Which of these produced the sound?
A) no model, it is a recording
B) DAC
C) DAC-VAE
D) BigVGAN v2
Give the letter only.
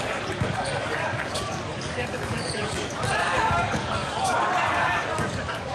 B